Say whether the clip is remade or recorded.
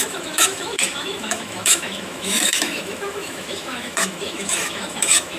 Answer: remade